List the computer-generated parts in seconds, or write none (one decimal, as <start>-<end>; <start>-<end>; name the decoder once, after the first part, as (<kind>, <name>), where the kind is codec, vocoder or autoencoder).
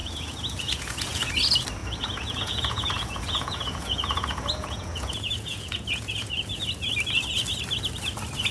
0.0-1.3 (vocoder, Vocos); 1.8-6.6